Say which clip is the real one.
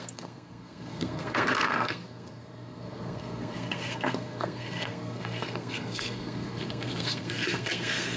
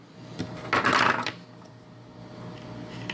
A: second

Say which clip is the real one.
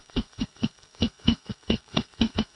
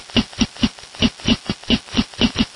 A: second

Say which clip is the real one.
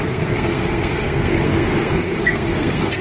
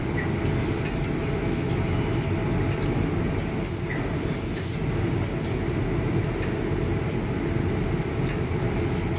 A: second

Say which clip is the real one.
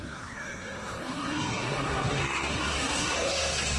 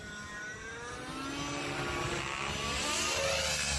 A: second